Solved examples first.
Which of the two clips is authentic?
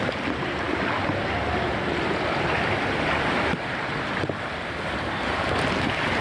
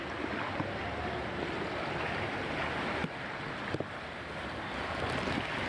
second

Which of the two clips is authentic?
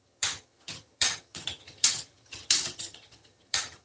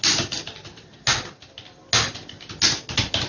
second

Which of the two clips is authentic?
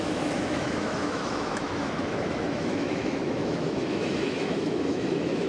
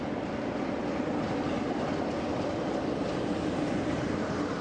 second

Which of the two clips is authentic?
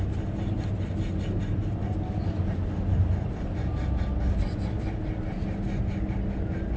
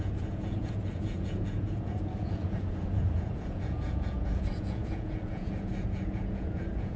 first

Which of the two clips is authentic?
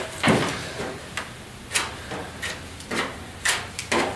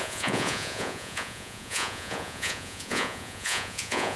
first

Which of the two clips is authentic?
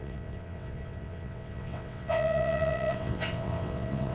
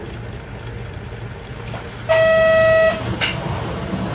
second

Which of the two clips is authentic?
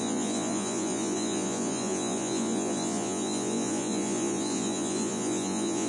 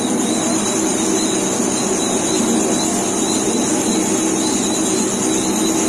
second